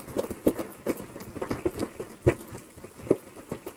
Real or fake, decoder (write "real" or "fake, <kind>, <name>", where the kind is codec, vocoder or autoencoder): real